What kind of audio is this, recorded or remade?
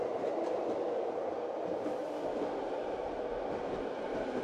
recorded